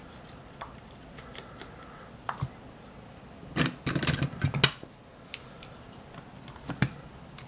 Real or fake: real